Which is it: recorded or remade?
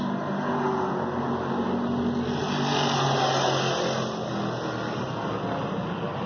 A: recorded